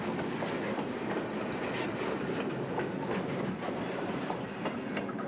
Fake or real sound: real